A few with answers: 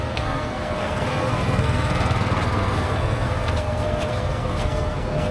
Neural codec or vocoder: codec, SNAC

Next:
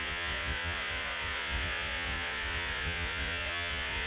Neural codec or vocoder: vocoder, Vocos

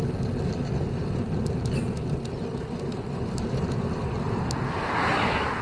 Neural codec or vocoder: none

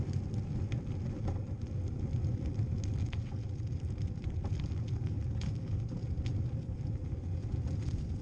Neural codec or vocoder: none